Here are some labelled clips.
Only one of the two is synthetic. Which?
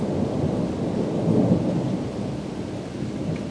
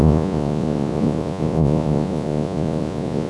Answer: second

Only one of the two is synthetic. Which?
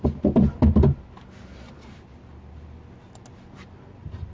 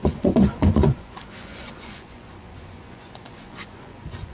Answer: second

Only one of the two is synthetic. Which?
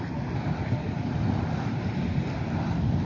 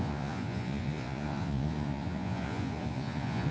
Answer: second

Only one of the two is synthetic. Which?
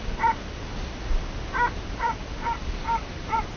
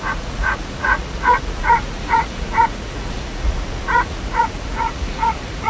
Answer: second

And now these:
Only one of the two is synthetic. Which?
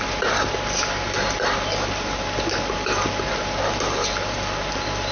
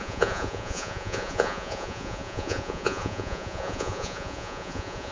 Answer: second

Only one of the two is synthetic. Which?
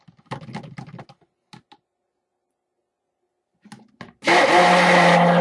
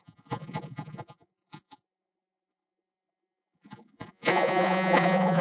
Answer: second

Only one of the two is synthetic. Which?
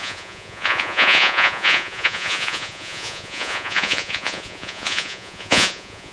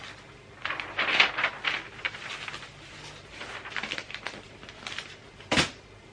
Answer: first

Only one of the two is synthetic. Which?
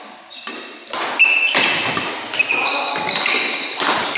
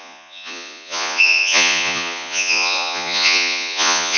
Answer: second